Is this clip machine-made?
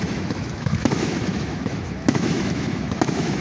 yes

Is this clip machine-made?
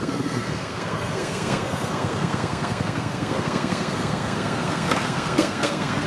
yes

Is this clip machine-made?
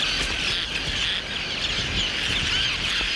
no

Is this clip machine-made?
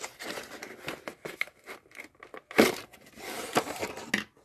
no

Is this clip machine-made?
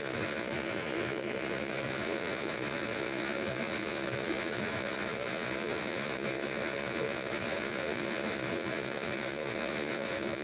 yes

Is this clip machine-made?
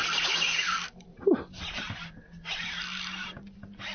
no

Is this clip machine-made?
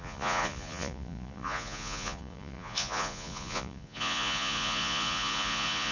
yes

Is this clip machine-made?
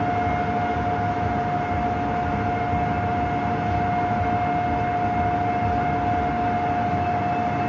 no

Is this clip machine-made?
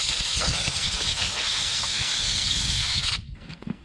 yes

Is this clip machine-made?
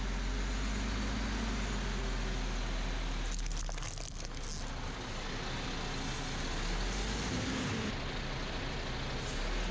no